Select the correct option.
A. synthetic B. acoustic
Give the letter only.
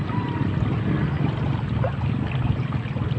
B